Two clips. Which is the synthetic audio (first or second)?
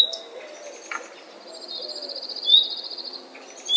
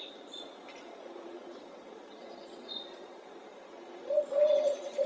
second